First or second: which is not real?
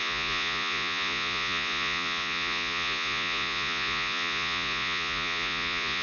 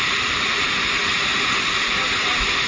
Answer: first